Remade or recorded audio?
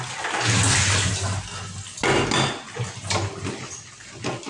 recorded